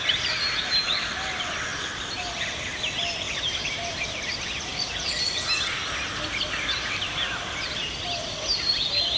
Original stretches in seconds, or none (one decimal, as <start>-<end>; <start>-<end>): 0.0-1.7; 3.5-4.7; 7.8-9.2